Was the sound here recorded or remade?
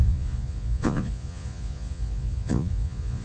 remade